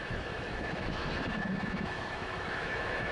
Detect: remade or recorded remade